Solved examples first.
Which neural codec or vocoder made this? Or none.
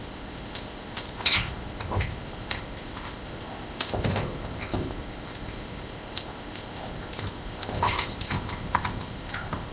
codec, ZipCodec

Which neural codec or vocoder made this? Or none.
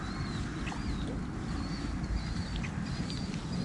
none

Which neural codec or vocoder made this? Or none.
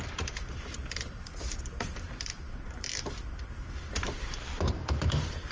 vocoder, BigVGAN v2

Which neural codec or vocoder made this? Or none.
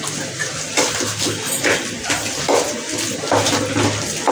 none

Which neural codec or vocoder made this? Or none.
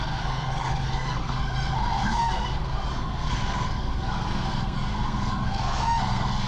codec, SNAC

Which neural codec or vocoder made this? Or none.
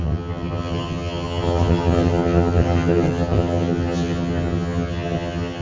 vocoder, HiFi-GAN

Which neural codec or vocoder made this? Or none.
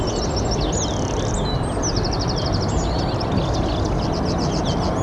none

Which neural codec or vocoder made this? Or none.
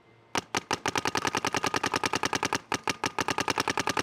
none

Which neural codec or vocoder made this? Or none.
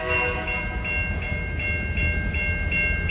none